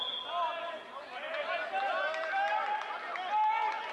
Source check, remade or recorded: recorded